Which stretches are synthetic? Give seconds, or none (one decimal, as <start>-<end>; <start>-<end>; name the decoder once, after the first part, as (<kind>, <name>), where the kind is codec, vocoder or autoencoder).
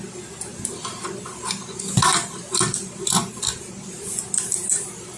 none